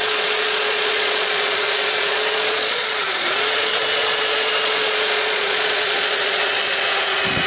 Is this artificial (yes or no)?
yes